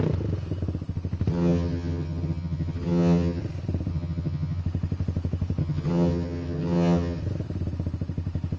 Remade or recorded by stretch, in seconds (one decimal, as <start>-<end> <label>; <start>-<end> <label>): 0.0-1.3 recorded; 1.3-3.4 remade; 3.4-3.9 recorded; 3.9-4.6 remade; 4.6-5.6 recorded; 5.6-7.2 remade; 7.2-8.6 recorded